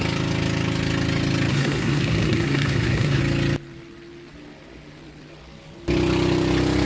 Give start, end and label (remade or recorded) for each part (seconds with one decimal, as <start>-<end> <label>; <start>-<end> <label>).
0.0-1.5 recorded; 1.5-3.2 remade; 3.2-6.9 recorded

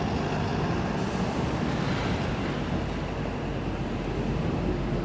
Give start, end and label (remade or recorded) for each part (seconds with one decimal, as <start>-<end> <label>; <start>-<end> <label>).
0.0-5.0 recorded

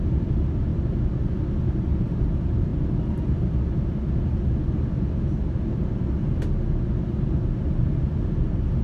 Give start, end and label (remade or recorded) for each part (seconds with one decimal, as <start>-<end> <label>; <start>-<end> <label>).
0.0-0.7 remade; 0.7-1.6 recorded; 1.6-2.7 remade; 2.7-7.6 recorded; 7.6-8.8 remade

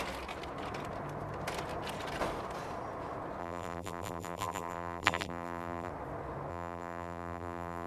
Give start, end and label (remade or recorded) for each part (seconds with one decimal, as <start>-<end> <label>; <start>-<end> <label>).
0.0-3.4 recorded; 3.4-5.9 remade; 5.9-6.5 recorded; 6.5-7.9 remade

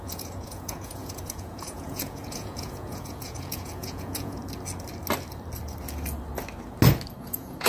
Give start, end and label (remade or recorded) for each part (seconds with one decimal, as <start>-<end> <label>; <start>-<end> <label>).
0.0-4.4 remade; 4.4-7.2 recorded; 7.2-7.7 remade

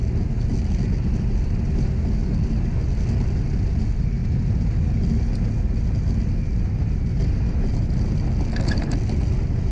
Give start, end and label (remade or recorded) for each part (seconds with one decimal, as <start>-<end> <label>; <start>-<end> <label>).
0.0-9.7 recorded